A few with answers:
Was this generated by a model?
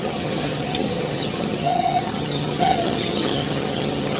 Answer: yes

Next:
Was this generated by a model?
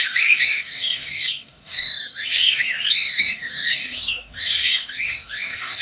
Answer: yes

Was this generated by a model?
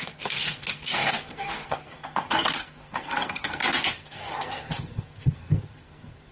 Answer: yes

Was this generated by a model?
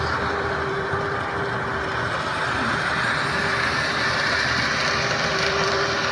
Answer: no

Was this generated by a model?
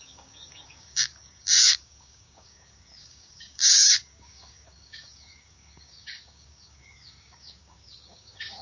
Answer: yes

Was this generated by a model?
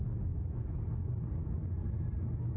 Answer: no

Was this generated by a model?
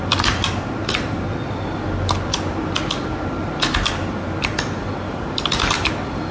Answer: no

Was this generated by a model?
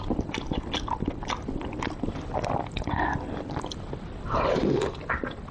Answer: no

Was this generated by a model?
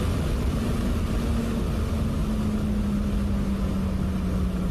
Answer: no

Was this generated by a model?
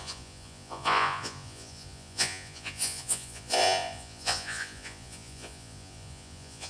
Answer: yes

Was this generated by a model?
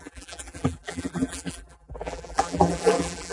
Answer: yes